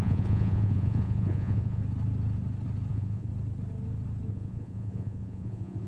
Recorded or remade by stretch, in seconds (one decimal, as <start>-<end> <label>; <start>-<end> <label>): 0.0-1.8 remade; 1.8-2.9 recorded; 2.9-3.3 remade; 3.3-4.3 recorded; 4.3-5.9 remade